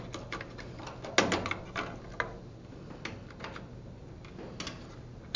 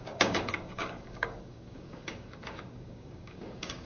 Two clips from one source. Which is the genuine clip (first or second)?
first